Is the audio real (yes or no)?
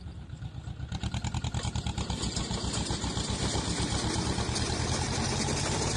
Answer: yes